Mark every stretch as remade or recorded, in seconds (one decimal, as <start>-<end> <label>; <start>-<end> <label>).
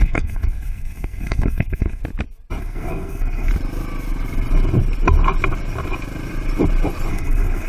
0.0-2.0 remade; 2.0-2.6 recorded; 2.6-3.5 remade; 3.5-7.1 recorded; 7.1-7.7 remade